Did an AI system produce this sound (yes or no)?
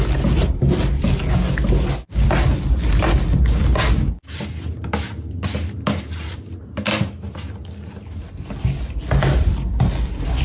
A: no